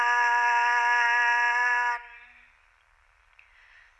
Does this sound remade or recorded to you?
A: recorded